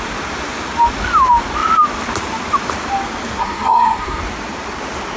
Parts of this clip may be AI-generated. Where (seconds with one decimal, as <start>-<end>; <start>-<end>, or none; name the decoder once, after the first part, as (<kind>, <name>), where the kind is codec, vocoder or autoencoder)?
3.4-4.2 (codec, SNAC)

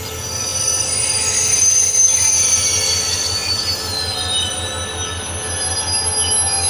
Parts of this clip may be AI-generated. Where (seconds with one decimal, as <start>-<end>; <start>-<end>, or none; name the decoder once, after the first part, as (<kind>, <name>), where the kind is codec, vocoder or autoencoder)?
none

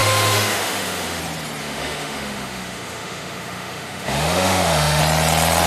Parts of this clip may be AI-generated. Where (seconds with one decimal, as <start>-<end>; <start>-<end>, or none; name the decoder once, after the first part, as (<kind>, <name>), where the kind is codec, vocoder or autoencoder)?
0.0-1.2 (autoencoder, DAC-VAE); 1.6-5.0

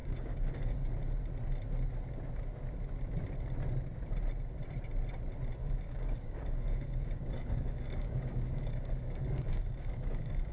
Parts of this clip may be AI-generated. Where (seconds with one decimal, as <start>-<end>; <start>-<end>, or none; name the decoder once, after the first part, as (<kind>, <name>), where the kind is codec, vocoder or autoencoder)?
0.0-0.9 (codec, DAC); 5.6-10.5

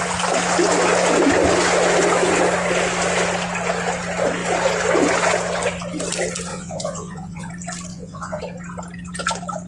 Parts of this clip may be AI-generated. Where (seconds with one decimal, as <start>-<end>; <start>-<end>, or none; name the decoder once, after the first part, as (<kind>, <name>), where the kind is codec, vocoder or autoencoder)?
6.5-7.5 (vocoder, Vocos); 7.9-8.4

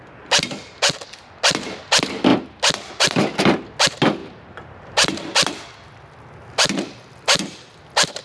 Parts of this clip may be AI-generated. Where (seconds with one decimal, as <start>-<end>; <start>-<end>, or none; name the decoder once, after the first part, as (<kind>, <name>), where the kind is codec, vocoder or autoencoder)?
none